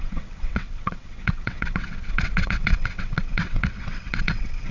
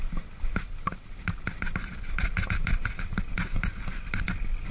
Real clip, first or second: second